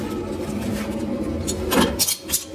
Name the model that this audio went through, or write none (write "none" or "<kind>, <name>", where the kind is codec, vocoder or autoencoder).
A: none